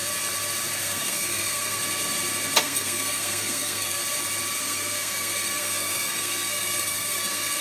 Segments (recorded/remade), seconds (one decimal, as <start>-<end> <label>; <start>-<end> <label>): 0.0-0.8 recorded; 0.8-1.8 remade; 1.8-2.6 recorded; 2.6-4.0 remade; 4.0-4.6 recorded; 4.6-7.6 remade